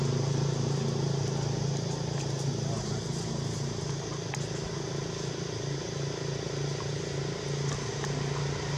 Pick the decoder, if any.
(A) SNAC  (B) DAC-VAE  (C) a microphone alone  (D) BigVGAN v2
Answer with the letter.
C